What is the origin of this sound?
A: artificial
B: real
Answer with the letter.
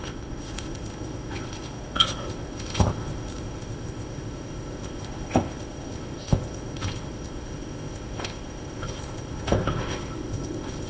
A